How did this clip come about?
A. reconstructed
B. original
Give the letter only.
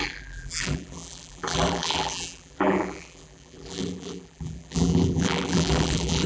A